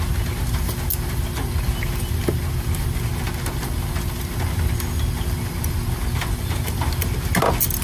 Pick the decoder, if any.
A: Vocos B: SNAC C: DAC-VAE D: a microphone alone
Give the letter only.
D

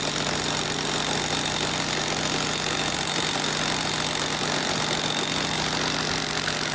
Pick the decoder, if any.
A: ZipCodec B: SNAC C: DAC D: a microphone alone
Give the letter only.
D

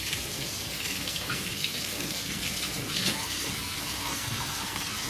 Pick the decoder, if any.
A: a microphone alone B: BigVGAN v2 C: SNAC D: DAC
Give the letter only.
C